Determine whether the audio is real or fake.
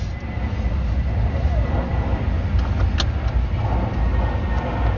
real